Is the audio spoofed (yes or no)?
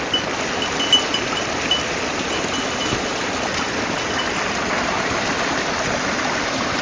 no